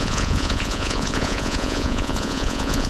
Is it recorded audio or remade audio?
remade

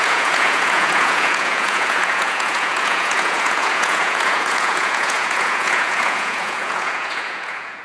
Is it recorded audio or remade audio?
remade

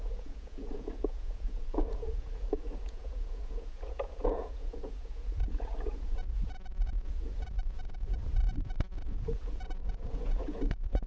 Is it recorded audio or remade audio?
remade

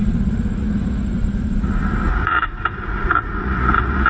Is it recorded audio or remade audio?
remade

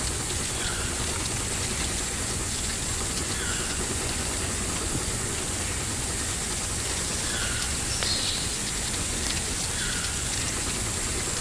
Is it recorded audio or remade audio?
remade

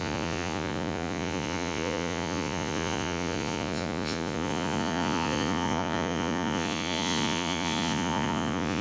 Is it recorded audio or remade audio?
remade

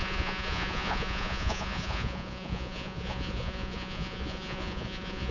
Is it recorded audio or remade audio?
remade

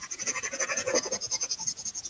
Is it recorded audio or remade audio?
remade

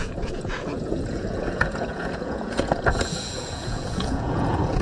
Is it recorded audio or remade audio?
remade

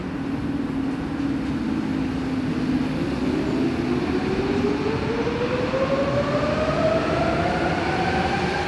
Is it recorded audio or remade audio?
recorded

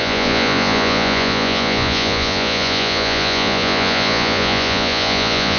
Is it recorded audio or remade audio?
remade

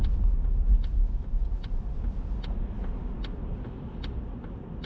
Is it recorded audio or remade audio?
recorded